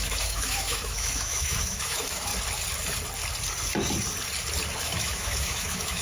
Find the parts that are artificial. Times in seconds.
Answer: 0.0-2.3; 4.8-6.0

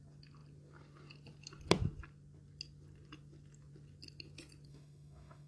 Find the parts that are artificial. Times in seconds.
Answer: 4.7-5.5